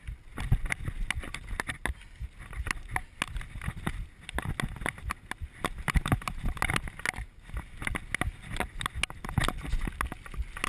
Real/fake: real